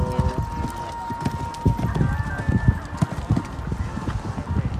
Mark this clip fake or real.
real